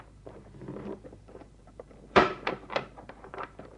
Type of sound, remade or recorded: remade